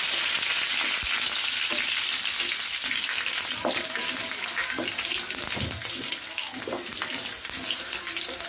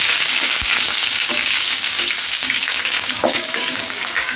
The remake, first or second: second